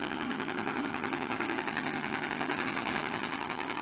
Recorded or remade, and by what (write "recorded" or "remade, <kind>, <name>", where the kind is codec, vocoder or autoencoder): remade, vocoder, HiFi-GAN